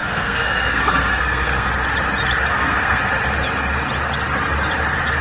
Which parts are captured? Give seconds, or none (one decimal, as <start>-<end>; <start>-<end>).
1.7-2.5; 3.0-5.2